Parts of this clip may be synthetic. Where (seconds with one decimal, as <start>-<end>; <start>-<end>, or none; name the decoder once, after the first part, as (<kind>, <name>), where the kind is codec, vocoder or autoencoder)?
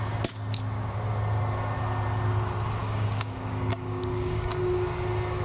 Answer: 2.8-4.6 (codec, DAC)